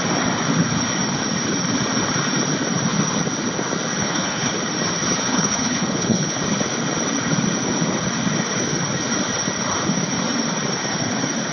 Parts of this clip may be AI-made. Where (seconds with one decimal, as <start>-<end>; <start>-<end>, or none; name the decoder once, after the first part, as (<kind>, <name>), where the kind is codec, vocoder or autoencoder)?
4.0-4.5 (codec, HILCodec); 5.3-6.4